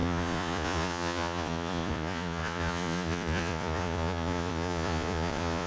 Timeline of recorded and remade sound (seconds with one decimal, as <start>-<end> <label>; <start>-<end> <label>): 0.0-5.7 remade